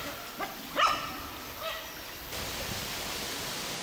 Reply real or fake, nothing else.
real